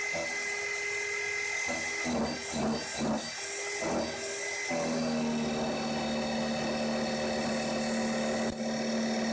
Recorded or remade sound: recorded